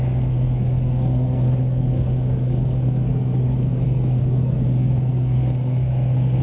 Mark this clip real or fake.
fake